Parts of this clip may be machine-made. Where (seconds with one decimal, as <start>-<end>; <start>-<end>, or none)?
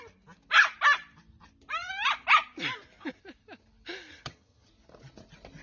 4.1-4.7